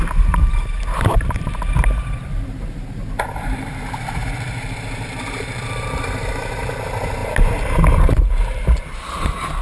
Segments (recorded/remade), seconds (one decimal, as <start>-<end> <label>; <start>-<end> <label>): 0.0-9.6 remade